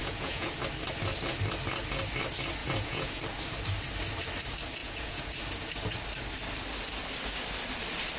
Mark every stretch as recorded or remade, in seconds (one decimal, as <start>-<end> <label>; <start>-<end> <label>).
0.0-0.5 remade; 0.5-2.6 recorded; 2.6-3.2 remade; 3.2-4.8 recorded; 4.8-5.4 remade; 5.4-8.2 recorded